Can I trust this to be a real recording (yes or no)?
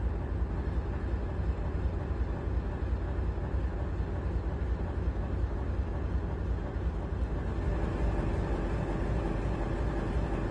yes